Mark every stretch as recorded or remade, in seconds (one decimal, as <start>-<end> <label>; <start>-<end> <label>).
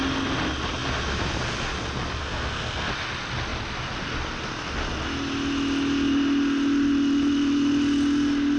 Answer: 0.0-2.2 recorded; 2.2-2.9 remade; 2.9-8.6 recorded